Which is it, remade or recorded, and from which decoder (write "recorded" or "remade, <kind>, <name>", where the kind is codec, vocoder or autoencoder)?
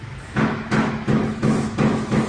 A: remade, autoencoder, DAC-VAE